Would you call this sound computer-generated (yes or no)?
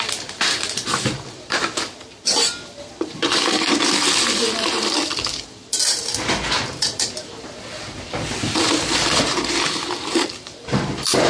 yes